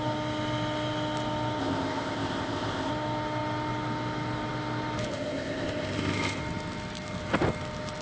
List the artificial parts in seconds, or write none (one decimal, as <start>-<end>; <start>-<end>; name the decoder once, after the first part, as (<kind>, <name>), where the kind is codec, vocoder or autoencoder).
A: 1.6-2.9 (codec, ZipCodec); 5.1-6.4